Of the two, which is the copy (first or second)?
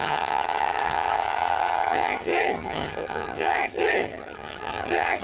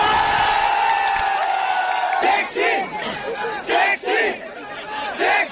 first